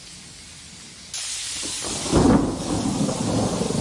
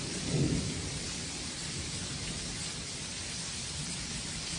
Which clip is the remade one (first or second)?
second